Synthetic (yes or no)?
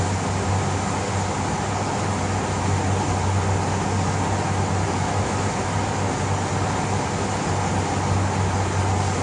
no